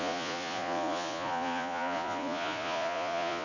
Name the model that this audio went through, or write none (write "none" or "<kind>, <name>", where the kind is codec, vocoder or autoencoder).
vocoder, Vocos